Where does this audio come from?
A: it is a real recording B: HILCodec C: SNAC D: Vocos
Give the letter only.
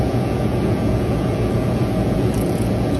D